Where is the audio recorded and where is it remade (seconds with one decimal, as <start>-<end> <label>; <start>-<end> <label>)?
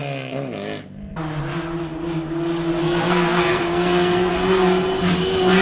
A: 0.0-2.8 recorded; 2.8-4.3 remade; 4.3-5.6 recorded